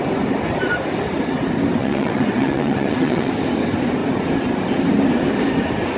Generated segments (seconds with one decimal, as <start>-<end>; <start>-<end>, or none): 1.8-3.3